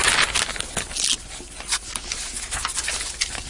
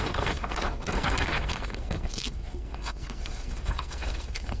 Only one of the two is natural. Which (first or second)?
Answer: first